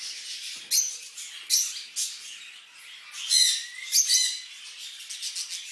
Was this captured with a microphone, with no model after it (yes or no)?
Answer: yes